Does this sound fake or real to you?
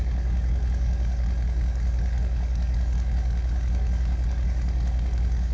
fake